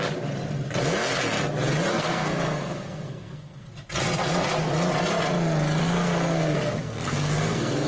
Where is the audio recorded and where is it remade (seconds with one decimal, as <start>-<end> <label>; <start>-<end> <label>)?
0.0-1.9 recorded; 1.9-3.7 remade; 3.7-5.8 recorded; 5.8-7.9 remade